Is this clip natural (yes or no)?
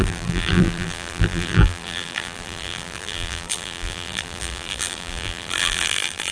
no